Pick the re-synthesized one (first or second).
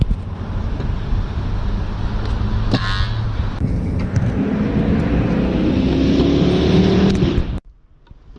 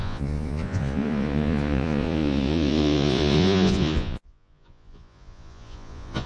second